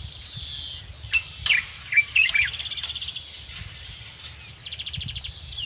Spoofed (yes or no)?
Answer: no